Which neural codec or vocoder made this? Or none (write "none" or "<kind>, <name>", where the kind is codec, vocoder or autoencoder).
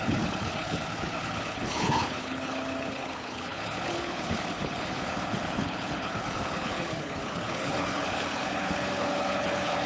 codec, HILCodec